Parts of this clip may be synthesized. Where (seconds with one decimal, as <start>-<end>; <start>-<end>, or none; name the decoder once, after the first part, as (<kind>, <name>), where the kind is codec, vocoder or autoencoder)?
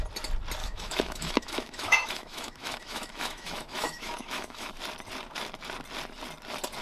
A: 0.6-4.7 (autoencoder, DAC-VAE)